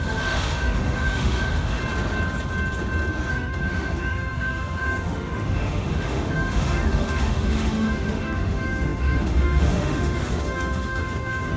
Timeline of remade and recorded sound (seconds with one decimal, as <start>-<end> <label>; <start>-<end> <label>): 0.0-1.8 remade; 1.8-3.3 recorded; 3.3-11.6 remade